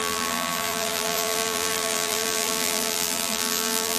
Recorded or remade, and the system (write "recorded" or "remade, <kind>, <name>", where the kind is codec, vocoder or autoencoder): remade, vocoder, BigVGAN v2